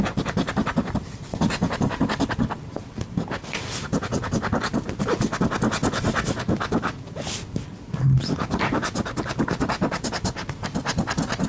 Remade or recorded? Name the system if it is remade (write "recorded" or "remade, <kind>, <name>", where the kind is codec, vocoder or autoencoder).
recorded